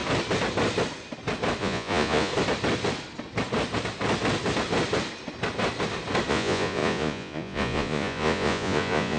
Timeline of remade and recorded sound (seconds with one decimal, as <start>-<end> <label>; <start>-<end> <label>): 0.0-1.6 recorded; 1.6-2.3 remade; 2.3-6.3 recorded; 6.3-9.2 remade